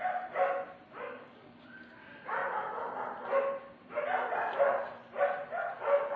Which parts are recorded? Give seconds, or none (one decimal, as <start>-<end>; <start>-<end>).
0.0-1.0; 1.6-6.2